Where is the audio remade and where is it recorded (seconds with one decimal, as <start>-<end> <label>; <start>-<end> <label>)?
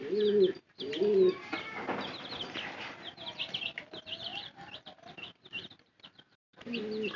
0.0-4.3 recorded; 4.3-6.6 remade; 6.6-7.2 recorded